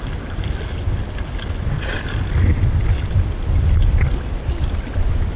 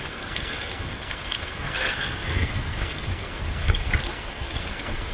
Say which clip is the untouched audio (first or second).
first